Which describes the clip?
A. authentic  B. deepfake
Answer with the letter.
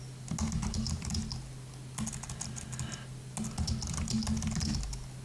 A